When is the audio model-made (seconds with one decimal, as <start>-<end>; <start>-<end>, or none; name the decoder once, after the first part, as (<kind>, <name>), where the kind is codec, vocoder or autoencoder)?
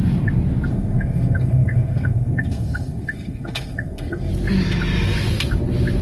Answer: 0.7-4.3 (codec, SNAC)